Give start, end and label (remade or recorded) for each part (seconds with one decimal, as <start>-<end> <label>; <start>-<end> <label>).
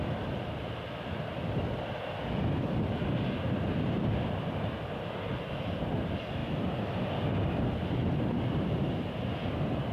0.0-9.9 recorded